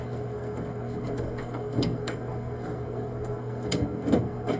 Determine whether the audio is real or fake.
fake